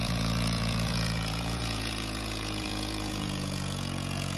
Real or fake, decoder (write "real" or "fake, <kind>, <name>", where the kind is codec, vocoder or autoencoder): fake, vocoder, Vocos